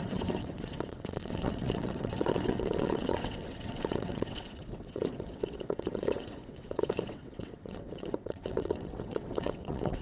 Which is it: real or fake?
fake